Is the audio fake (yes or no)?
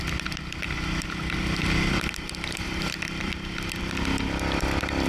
yes